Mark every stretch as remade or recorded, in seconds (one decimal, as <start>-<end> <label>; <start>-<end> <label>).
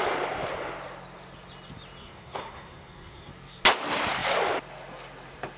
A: 0.0-2.0 recorded; 2.0-3.3 remade; 3.3-5.6 recorded